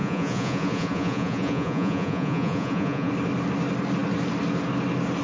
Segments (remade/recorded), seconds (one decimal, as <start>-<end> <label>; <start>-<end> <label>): 0.0-3.1 remade; 3.1-5.2 recorded